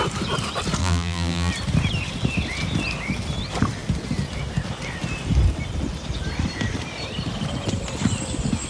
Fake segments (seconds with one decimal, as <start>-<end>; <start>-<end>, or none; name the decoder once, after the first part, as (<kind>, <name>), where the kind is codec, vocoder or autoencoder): 0.8-1.5 (vocoder, BigVGAN v2)